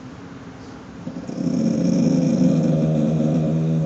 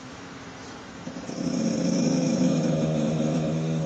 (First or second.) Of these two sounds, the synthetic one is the second